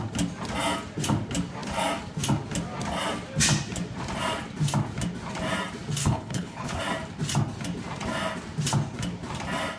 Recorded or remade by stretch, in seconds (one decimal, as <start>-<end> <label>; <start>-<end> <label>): 0.0-6.0 recorded; 6.0-6.8 remade; 6.8-9.8 recorded